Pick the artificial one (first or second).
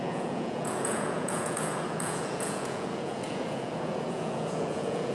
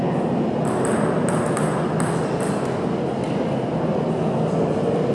first